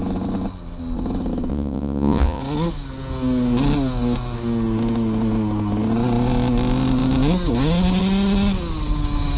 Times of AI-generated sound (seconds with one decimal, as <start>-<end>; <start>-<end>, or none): 1.5-2.4